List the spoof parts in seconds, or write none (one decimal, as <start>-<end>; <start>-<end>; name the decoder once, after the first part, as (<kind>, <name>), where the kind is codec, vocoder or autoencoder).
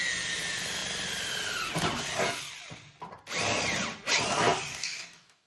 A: 4.7-5.5 (codec, DAC)